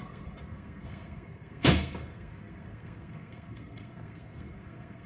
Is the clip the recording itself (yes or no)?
no